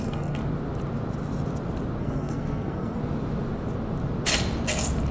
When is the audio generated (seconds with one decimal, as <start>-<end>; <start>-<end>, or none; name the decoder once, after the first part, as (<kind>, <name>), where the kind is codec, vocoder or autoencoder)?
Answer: 0.0-0.4 (codec, SNAC); 2.0-3.0